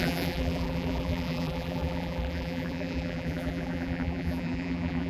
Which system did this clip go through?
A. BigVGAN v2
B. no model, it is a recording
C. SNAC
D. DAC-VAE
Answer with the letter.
A